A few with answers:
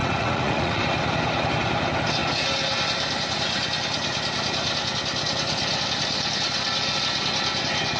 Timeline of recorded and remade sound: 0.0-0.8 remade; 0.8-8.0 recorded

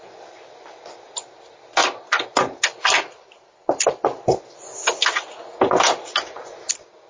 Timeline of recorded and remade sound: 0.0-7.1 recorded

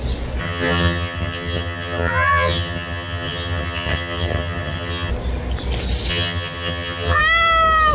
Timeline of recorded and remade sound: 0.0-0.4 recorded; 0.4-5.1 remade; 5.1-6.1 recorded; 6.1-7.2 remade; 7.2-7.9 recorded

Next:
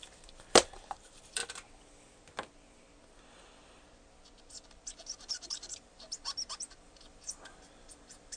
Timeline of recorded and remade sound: 0.0-1.4 remade; 1.4-5.0 recorded; 5.0-8.4 remade

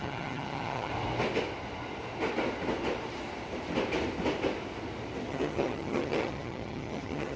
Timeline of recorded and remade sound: 0.0-0.9 remade; 0.9-5.3 recorded; 5.3-7.4 remade

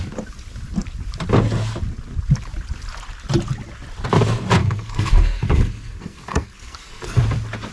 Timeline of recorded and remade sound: 0.0-4.6 recorded; 4.6-7.2 remade; 7.2-7.7 recorded